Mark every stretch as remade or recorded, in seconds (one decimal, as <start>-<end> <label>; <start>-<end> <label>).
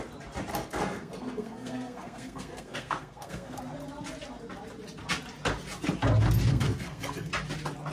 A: 0.0-0.5 recorded; 0.5-3.6 remade; 3.6-6.5 recorded; 6.5-7.3 remade; 7.3-7.9 recorded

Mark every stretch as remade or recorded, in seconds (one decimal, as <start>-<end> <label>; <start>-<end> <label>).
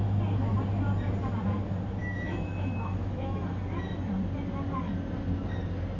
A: 0.0-2.0 recorded; 2.0-3.4 remade; 3.4-6.0 recorded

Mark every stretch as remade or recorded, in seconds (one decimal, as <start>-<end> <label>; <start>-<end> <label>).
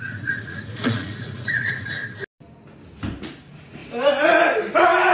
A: 0.0-2.0 remade; 2.0-3.2 recorded; 3.2-3.8 remade; 3.8-5.1 recorded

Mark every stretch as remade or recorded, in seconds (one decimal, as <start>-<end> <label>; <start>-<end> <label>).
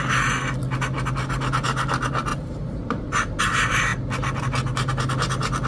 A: 0.0-2.3 recorded; 2.3-3.4 remade; 3.4-5.7 recorded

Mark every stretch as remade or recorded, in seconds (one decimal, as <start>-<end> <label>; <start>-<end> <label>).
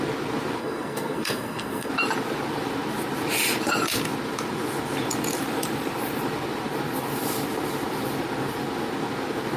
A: 0.0-0.6 recorded; 0.6-1.9 remade; 1.9-9.6 recorded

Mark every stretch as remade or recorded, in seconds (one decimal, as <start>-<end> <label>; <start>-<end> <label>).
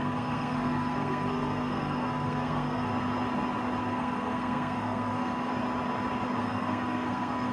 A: 0.0-2.9 remade; 2.9-3.8 recorded; 3.8-5.5 remade; 5.5-6.4 recorded; 6.4-7.5 remade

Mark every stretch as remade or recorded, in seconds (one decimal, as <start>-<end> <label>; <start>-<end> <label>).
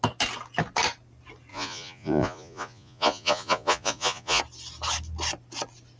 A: 0.0-1.5 recorded; 1.5-4.4 remade; 4.4-6.0 recorded